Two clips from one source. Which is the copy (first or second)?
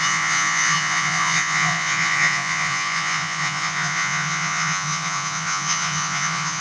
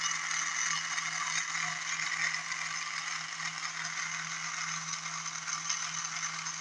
first